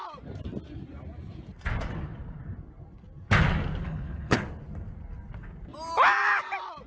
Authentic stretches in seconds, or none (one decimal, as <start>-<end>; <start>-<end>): 0.0-3.8; 4.4-6.9